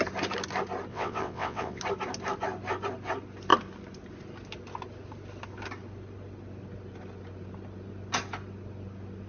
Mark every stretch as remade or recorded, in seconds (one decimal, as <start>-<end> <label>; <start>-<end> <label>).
0.0-0.9 recorded; 0.9-1.8 remade; 1.8-9.3 recorded